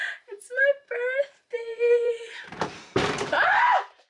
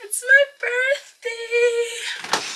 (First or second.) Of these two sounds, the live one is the second